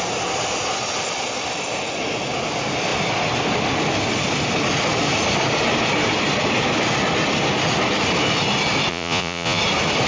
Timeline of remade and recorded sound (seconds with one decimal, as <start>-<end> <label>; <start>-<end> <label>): 0.0-8.9 recorded; 8.9-9.6 remade; 9.6-10.1 recorded